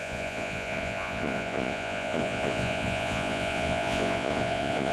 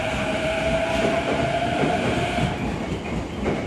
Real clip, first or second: second